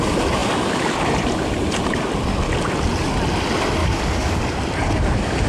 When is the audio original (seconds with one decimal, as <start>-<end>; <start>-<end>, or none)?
0.0-3.8; 4.4-5.5